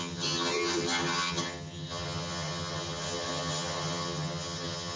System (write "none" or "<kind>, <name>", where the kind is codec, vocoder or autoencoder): vocoder, HiFi-GAN